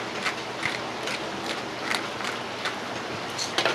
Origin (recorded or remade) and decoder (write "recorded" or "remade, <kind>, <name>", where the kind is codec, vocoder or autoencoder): recorded